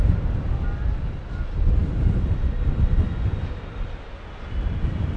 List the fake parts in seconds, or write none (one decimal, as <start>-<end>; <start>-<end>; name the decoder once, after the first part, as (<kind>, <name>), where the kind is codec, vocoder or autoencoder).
none